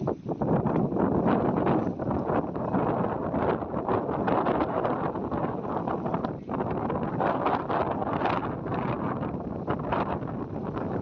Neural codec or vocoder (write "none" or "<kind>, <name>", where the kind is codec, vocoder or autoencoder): none